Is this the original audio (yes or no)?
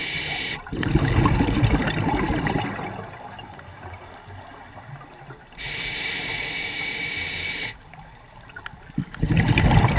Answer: yes